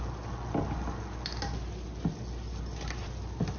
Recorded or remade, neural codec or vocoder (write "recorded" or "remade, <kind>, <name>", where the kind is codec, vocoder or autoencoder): recorded